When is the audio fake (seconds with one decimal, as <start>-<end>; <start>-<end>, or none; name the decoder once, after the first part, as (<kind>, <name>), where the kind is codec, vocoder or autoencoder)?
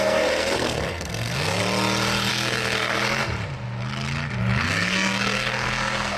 0.0-1.6 (codec, SNAC); 2.3-3.2; 4.6-6.2